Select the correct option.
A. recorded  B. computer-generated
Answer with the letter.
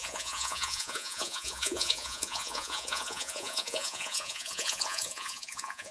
B